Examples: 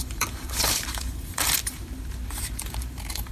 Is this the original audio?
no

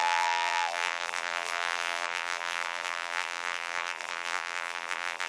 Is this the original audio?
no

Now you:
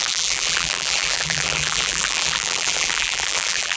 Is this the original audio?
no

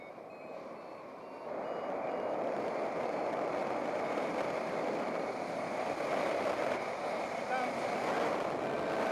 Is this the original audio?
yes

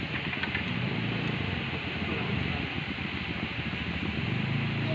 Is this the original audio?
yes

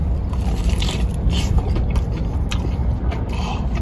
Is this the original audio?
no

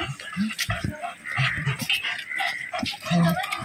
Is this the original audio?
yes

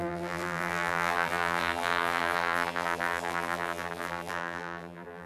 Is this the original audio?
no